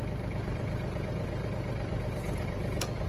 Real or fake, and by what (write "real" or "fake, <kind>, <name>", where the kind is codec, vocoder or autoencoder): fake, vocoder, BigVGAN v2